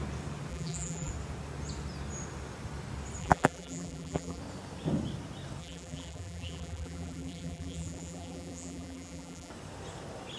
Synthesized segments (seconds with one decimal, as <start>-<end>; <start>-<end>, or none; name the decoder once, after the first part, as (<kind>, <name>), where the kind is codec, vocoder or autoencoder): 0.5-1.1 (vocoder, BigVGAN v2); 3.2-4.4; 5.6-9.5